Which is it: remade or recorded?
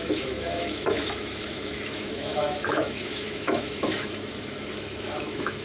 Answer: remade